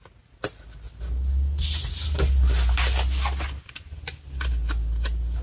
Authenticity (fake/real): real